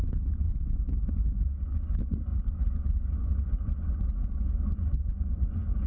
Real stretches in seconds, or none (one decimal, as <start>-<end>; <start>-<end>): none